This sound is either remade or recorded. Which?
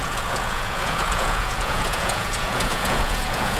remade